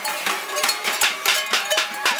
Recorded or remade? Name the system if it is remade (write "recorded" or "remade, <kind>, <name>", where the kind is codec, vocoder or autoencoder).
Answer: remade, vocoder, BigVGAN v2